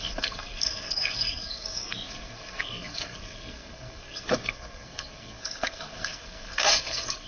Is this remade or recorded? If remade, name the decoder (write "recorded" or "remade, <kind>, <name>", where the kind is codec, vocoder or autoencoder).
remade, codec, SNAC